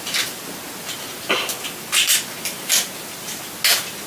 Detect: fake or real real